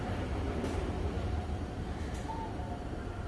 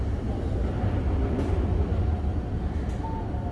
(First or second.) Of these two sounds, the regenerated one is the first